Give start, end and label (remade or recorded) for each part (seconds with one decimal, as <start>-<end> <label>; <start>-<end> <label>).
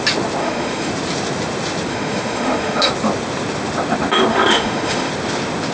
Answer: 0.0-0.4 recorded; 0.4-0.9 remade; 0.9-1.9 recorded; 1.9-2.9 remade; 2.9-4.3 recorded; 4.3-5.1 remade; 5.1-5.7 recorded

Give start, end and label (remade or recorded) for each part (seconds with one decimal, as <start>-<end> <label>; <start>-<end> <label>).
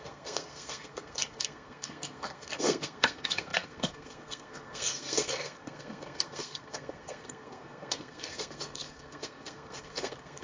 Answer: 0.0-10.4 remade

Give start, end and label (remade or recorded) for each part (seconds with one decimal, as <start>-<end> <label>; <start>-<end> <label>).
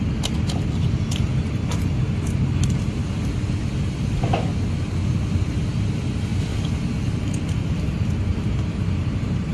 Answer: 0.0-1.3 recorded; 1.3-1.9 remade; 1.9-8.3 recorded; 8.3-9.5 remade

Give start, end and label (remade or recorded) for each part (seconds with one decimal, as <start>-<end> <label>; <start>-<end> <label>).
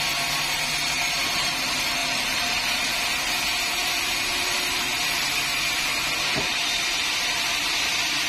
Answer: 0.0-2.0 recorded; 2.0-3.0 remade; 3.0-8.3 recorded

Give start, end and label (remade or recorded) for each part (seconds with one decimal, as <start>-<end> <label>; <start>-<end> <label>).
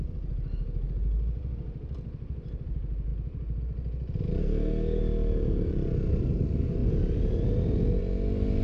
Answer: 0.0-4.4 recorded; 4.4-5.0 remade; 5.0-8.6 recorded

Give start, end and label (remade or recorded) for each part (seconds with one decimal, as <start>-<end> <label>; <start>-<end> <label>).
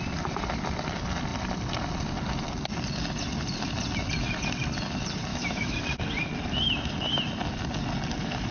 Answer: 0.0-5.3 recorded; 5.3-5.8 remade; 5.8-8.5 recorded